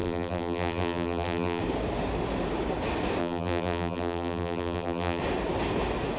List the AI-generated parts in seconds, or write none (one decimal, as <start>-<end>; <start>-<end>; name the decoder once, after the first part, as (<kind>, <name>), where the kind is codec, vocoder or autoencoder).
0.0-1.6 (vocoder, BigVGAN v2); 3.2-5.2